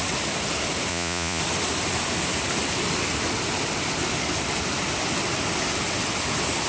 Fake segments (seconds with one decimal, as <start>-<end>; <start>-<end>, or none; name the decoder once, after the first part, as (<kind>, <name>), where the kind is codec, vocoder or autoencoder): 0.9-1.4 (vocoder, Vocos)